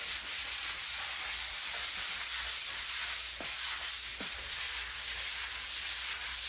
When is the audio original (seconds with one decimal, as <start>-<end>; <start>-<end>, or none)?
0.0-0.8; 1.5-4.1; 4.6-6.5